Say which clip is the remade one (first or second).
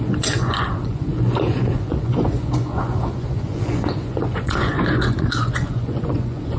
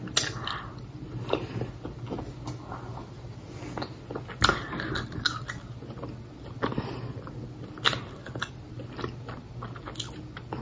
first